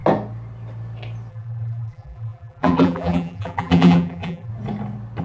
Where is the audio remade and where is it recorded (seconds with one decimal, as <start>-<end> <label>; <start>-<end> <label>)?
0.0-1.3 recorded; 1.3-4.5 remade; 4.5-5.2 recorded

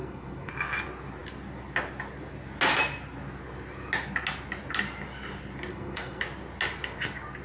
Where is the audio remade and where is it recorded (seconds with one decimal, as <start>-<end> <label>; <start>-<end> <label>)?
0.0-0.5 remade; 0.5-5.7 recorded; 5.7-6.2 remade; 6.2-7.4 recorded

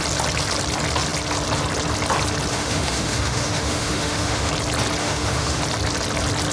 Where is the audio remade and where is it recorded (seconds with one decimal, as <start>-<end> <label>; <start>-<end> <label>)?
0.0-2.5 recorded; 2.5-4.5 remade; 4.5-5.0 recorded; 5.0-5.6 remade; 5.6-6.5 recorded

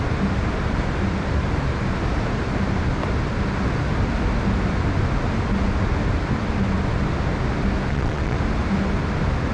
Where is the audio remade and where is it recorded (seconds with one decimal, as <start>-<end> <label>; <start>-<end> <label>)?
0.0-7.9 recorded; 7.9-8.4 remade; 8.4-9.5 recorded

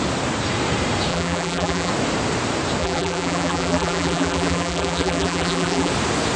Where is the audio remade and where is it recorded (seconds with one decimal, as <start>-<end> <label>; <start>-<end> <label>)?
0.0-1.1 recorded; 1.1-1.9 remade; 1.9-2.8 recorded; 2.8-5.9 remade; 5.9-6.4 recorded

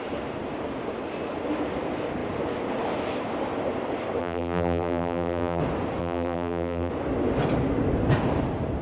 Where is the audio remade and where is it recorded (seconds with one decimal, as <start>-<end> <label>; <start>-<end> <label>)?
0.0-4.2 recorded; 4.2-5.6 remade; 5.6-6.0 recorded; 6.0-6.9 remade; 6.9-8.8 recorded